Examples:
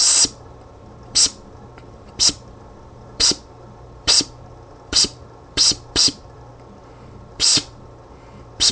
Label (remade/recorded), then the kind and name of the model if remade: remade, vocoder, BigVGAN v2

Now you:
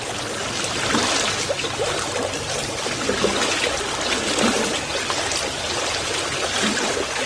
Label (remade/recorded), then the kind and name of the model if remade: recorded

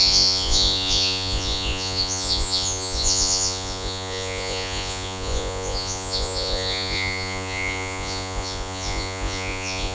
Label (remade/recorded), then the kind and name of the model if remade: remade, vocoder, Vocos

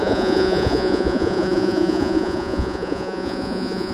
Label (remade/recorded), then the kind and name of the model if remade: remade, vocoder, Vocos